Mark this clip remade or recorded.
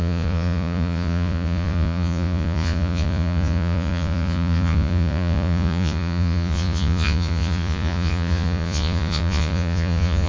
remade